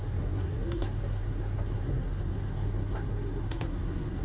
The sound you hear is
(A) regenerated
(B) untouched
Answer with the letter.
A